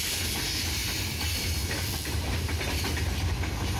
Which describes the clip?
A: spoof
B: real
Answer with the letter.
B